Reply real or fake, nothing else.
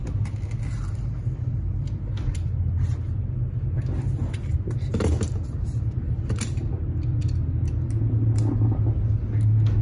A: real